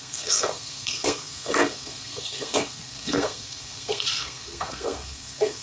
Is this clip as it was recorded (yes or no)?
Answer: no